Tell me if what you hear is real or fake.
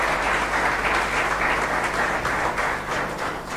real